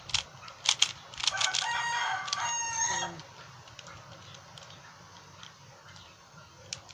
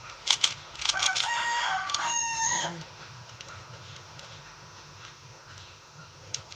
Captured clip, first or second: first